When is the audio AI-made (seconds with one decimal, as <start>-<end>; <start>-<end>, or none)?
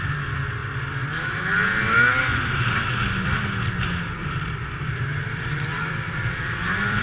2.3-2.8; 4.2-7.0